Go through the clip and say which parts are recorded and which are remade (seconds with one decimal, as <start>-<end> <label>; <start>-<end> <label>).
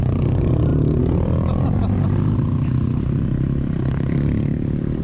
0.0-5.0 recorded